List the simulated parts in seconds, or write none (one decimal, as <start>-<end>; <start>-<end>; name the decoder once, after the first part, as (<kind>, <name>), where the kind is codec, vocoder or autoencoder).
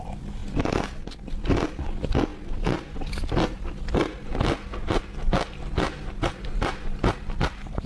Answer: none